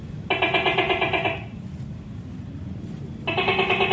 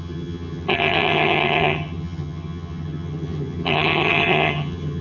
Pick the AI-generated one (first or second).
second